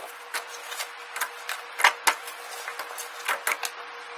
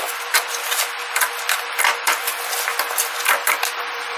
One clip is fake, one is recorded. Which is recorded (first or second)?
first